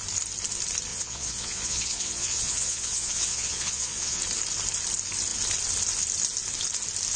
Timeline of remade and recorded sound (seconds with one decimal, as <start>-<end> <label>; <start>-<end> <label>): 0.0-0.9 recorded; 0.9-4.2 remade; 4.2-7.2 recorded